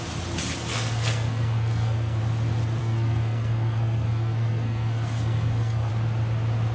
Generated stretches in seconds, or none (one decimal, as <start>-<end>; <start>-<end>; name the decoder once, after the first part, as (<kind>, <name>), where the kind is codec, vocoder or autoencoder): 0.7-2.2 (codec, SNAC); 2.8-5.9